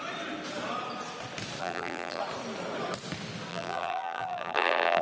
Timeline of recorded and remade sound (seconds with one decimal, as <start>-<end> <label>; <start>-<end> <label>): 0.0-1.6 recorded; 1.6-2.2 remade; 2.2-3.5 recorded; 3.5-5.0 remade